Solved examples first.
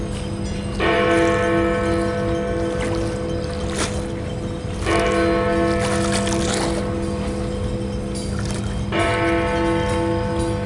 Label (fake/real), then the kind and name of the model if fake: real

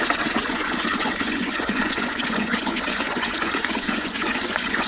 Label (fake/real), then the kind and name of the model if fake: fake, vocoder, Vocos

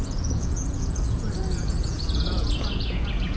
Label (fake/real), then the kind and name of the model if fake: fake, vocoder, Vocos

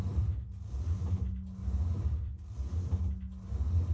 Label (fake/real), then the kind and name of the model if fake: real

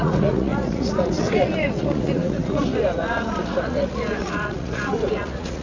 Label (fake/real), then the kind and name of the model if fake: fake, vocoder, Vocos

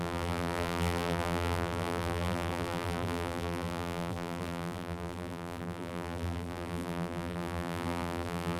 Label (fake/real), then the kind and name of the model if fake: fake, vocoder, BigVGAN v2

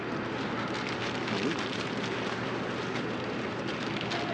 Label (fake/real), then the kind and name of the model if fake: real